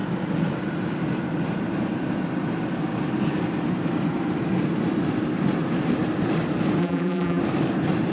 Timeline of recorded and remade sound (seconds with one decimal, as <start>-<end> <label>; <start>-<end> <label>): 0.0-6.8 recorded; 6.8-7.4 remade; 7.4-8.1 recorded